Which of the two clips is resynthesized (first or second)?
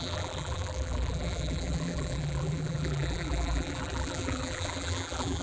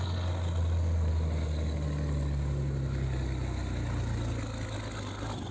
first